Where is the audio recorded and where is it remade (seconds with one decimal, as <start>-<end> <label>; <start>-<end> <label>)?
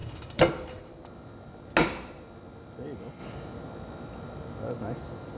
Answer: 0.0-5.4 recorded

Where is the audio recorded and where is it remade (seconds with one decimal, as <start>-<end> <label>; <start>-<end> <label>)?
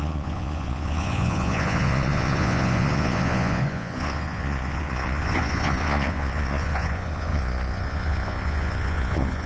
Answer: 0.0-9.5 remade